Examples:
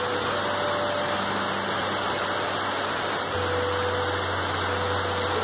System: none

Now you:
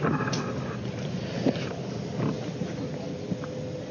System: none